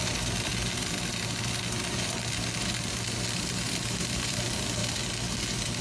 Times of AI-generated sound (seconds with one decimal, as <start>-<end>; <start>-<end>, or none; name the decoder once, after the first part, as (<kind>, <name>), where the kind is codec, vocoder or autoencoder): 0.0-0.5 (vocoder, BigVGAN v2); 4.0-4.8